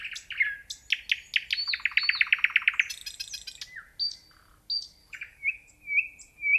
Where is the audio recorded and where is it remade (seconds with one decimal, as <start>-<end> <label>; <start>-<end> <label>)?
0.0-5.0 recorded; 5.0-5.7 remade; 5.7-6.6 recorded